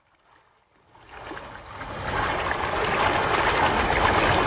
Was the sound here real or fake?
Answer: real